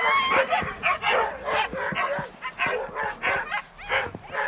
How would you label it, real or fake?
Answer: real